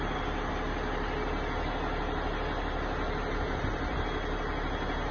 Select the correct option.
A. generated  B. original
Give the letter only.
B